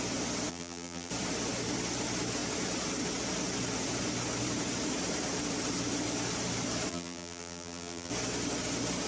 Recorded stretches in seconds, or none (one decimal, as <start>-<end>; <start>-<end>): 0.0-0.5; 1.1-6.9; 8.1-9.1